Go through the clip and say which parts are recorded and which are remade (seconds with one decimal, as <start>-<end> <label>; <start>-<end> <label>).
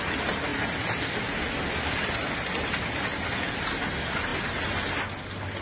0.0-5.6 recorded